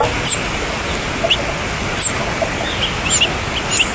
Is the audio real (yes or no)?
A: yes